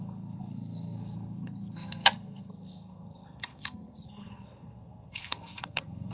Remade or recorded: remade